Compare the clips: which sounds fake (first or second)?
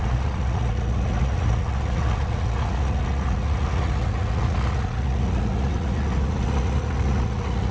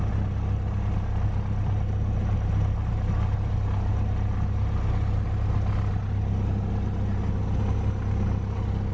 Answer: first